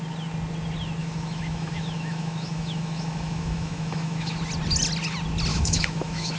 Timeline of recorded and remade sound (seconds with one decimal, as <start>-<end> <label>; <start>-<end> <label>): 0.0-1.0 recorded; 1.0-4.4 remade; 4.4-5.5 recorded; 5.5-6.4 remade